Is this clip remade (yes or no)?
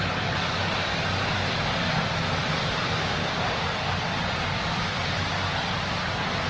no